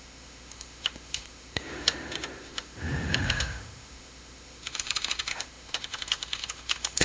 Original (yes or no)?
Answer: no